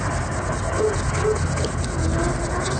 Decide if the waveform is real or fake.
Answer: real